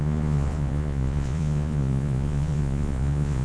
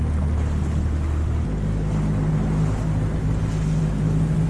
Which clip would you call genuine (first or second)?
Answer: second